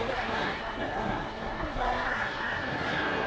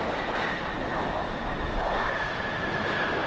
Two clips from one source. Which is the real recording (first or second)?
second